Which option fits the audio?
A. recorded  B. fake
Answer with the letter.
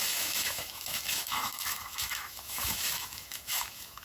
B